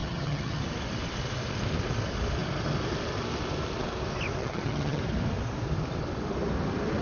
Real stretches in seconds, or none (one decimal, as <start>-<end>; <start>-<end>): 0.6-4.4; 5.0-7.0